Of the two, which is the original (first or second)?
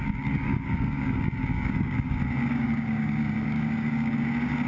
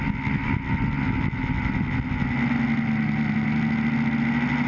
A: second